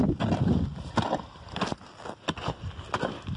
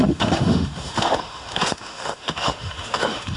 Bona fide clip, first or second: first